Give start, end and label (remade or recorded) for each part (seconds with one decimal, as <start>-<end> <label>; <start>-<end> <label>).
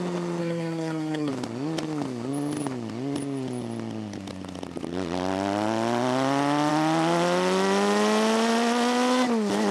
0.0-0.4 recorded; 0.4-1.3 remade; 1.3-9.7 recorded